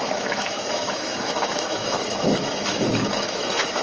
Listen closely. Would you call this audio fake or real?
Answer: fake